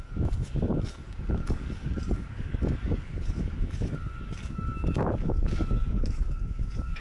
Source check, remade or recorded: remade